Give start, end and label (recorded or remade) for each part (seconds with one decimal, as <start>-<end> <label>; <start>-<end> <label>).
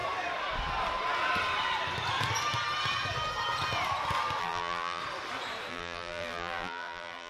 0.0-4.4 recorded; 4.4-5.0 remade; 5.0-5.7 recorded; 5.7-7.3 remade